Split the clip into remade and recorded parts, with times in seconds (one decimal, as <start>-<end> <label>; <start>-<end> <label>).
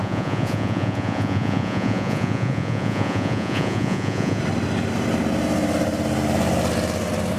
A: 0.0-4.4 remade; 4.4-7.4 recorded